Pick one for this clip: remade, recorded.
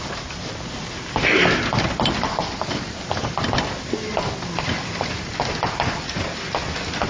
recorded